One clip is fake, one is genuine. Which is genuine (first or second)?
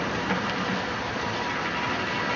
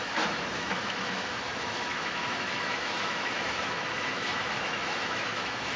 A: first